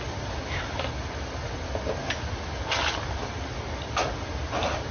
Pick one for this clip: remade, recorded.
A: recorded